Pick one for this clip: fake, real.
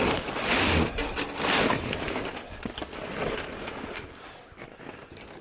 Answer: real